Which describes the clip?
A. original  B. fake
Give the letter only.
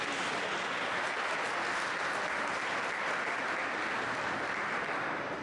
A